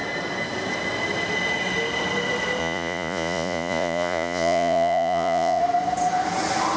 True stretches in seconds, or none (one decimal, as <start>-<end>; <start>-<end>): 0.0-2.6; 5.6-6.8